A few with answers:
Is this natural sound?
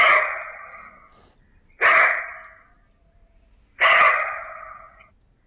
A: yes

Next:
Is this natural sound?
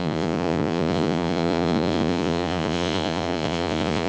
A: no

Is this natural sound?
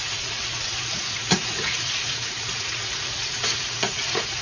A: no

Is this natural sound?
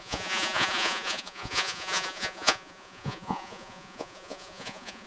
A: no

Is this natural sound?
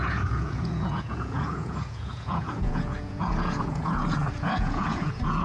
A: no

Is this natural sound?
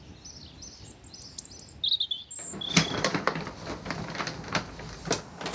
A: yes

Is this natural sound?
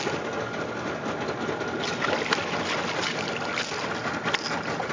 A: yes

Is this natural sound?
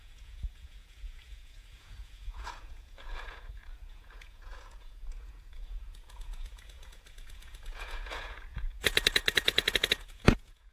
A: no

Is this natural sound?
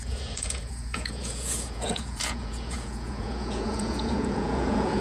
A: no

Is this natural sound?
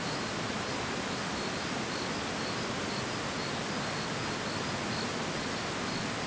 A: yes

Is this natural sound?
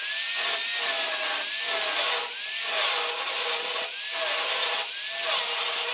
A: yes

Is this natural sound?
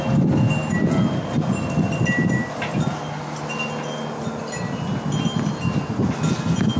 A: yes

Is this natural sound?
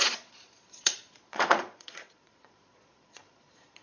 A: no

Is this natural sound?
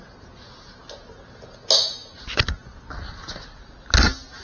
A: yes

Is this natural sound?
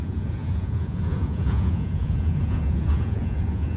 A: no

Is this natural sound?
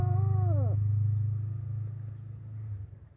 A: yes